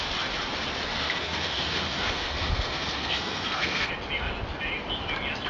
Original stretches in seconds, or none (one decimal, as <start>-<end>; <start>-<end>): 0.0-0.9; 3.9-5.5